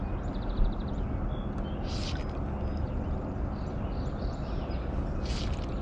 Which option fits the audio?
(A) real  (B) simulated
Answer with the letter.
A